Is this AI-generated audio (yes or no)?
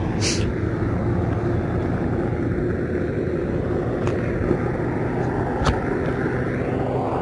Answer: no